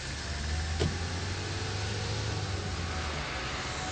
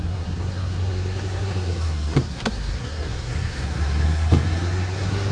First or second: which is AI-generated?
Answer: second